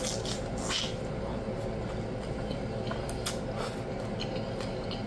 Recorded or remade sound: recorded